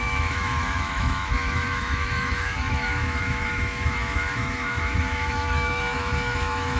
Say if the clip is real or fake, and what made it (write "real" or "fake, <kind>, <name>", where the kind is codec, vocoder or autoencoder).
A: fake, autoencoder, DAC-VAE